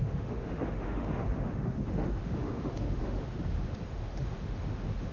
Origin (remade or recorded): remade